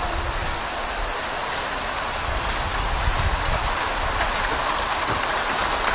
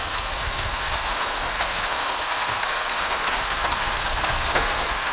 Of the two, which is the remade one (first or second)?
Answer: second